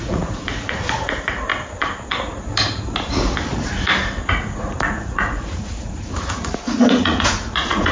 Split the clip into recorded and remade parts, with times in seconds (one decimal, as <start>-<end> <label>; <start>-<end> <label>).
0.0-1.5 remade; 1.5-4.3 recorded; 4.3-7.9 remade